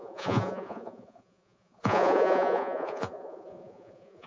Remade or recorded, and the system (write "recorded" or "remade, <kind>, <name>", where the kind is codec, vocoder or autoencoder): remade, vocoder, Vocos